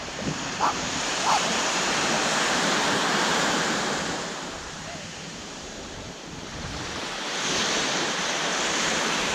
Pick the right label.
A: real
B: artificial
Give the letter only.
B